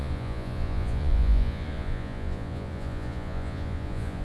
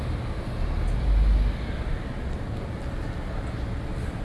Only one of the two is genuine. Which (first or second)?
second